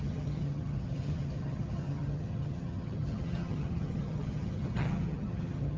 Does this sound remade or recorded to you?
remade